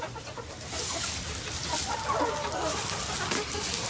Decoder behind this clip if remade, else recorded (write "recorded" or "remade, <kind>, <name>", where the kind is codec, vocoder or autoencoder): recorded